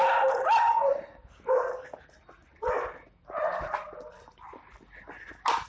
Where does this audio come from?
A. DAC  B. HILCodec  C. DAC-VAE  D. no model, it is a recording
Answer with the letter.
D